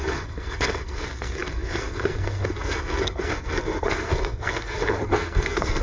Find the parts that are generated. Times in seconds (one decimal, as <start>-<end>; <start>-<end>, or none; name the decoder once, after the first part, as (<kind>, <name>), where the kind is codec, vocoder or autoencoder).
0.0-5.8 (codec, SNAC)